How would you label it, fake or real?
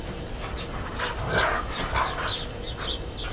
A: real